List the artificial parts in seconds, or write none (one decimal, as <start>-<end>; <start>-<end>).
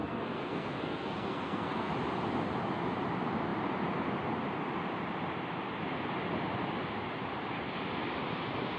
0.0-1.9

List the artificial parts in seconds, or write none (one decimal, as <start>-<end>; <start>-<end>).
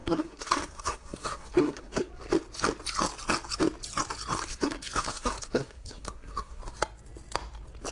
0.0-2.1; 4.5-6.6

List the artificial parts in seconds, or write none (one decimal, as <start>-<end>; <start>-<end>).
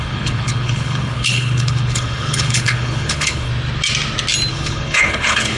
0.0-3.5; 4.5-5.6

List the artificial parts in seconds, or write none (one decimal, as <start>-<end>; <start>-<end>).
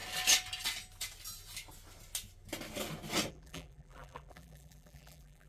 3.3-5.5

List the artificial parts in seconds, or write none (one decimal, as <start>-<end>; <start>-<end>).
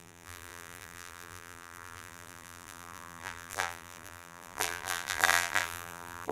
0.0-6.3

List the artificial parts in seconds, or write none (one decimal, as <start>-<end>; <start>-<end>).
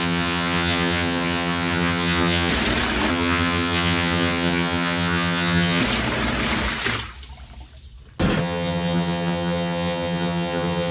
0.0-2.5; 3.1-5.8; 8.4-10.9